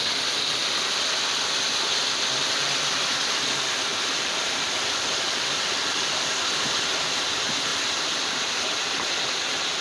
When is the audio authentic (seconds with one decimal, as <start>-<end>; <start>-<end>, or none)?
0.0-3.9; 6.0-7.7; 8.3-9.8